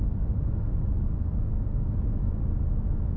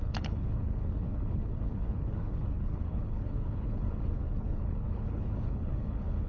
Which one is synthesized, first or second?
second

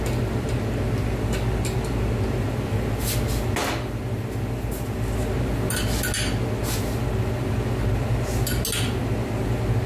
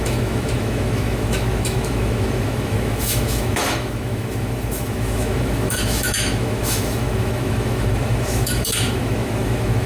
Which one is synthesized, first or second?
second